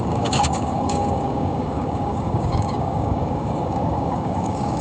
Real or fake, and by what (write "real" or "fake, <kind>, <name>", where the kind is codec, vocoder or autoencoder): fake, codec, DAC